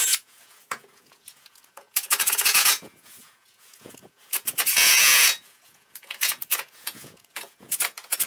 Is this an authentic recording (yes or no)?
no